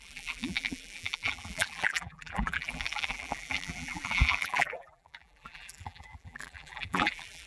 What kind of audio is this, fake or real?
fake